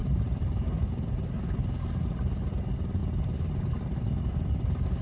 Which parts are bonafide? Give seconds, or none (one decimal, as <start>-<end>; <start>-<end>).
1.4-5.0